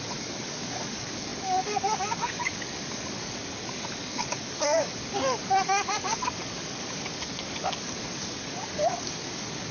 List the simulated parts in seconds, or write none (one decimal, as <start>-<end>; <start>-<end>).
0.0-9.7